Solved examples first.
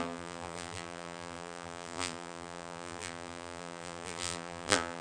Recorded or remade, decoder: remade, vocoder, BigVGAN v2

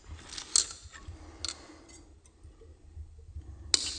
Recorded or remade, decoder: recorded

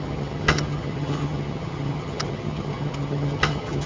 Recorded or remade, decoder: remade, vocoder, HiFi-GAN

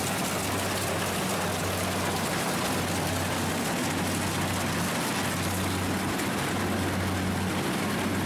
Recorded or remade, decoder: recorded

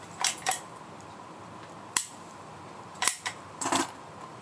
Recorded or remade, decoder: recorded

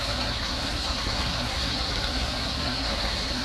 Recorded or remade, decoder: remade, codec, SNAC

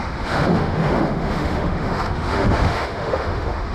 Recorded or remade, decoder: remade, autoencoder, DAC-VAE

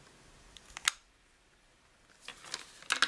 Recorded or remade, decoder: recorded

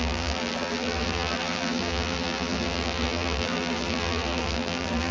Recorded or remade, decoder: remade, vocoder, BigVGAN v2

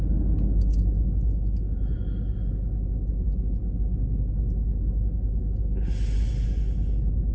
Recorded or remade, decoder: recorded